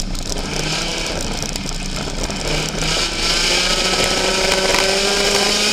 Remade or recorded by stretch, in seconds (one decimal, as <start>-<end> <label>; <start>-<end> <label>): 0.0-5.7 recorded